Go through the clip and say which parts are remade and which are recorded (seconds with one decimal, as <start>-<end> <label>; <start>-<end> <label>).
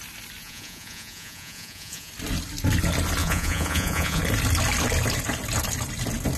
0.0-0.4 recorded; 0.4-2.1 remade; 2.1-3.2 recorded; 3.2-4.2 remade; 4.2-6.4 recorded